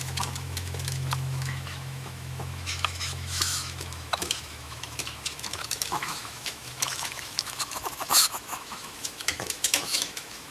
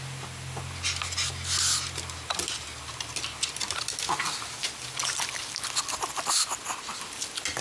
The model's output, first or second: first